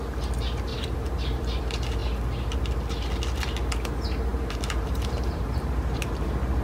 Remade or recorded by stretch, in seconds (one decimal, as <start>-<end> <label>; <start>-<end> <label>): 0.0-0.7 recorded; 0.7-1.6 remade; 1.6-4.3 recorded; 4.3-6.6 remade